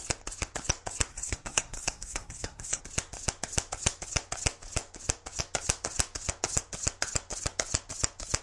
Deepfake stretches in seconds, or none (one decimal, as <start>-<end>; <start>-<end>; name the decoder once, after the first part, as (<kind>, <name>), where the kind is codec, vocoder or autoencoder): 1.1-2.8 (codec, SNAC)